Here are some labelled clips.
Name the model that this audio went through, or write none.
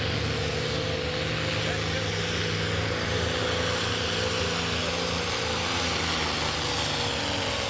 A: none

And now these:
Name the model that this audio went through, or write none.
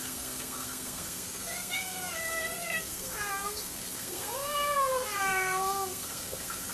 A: codec, SNAC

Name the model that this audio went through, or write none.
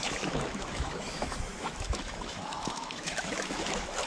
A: autoencoder, DAC-VAE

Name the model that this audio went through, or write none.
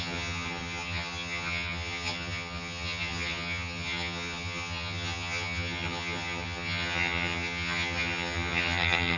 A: vocoder, HiFi-GAN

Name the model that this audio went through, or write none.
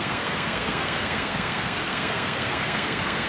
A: codec, SNAC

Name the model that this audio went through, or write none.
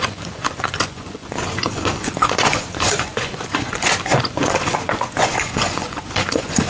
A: vocoder, Vocos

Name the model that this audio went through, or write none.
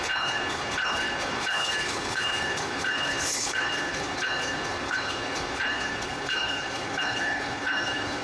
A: codec, HILCodec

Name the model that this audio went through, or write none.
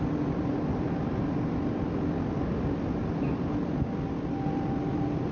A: none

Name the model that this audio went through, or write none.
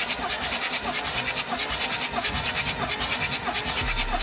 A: none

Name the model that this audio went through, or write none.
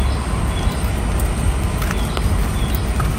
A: none